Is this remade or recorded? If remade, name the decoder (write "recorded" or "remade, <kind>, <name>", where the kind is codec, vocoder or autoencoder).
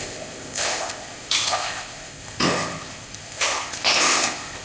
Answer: remade, codec, ZipCodec